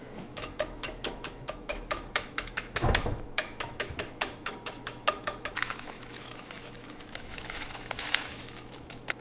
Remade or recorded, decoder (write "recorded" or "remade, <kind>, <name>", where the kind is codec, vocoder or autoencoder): remade, autoencoder, DAC-VAE